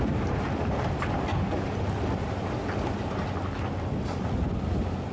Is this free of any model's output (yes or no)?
yes